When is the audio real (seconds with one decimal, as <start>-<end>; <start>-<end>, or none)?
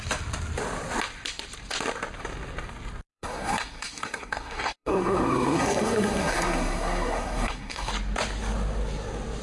0.0-3.1; 7.9-9.4